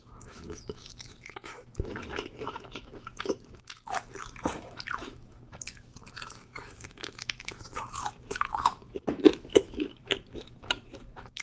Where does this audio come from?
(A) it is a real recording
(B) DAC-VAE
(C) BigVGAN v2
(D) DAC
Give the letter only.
B